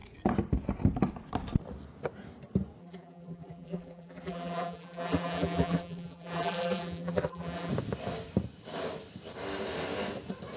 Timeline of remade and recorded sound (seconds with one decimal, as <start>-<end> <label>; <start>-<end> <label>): 0.0-2.8 recorded; 2.8-7.7 remade; 7.7-10.6 recorded